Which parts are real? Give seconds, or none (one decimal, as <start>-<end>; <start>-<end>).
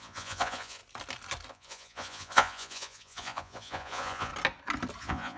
0.8-1.5; 4.3-5.0